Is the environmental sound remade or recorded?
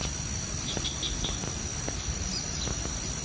recorded